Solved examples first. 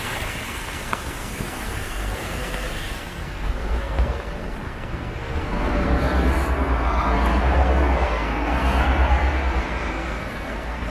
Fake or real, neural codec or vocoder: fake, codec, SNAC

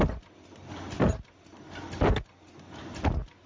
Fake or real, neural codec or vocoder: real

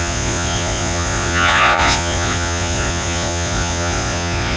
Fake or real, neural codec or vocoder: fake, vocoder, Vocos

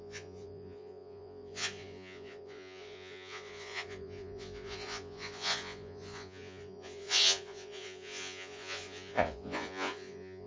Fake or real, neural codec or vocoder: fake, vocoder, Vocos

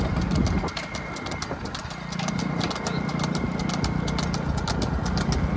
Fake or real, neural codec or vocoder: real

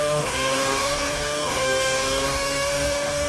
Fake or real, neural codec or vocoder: fake, codec, DAC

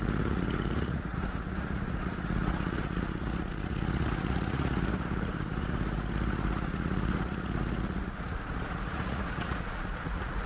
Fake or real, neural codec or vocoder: fake, vocoder, Vocos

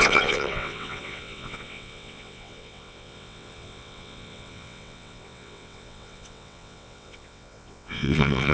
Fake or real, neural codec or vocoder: fake, vocoder, WaveNeXt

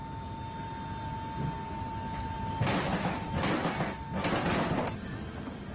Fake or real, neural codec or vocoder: real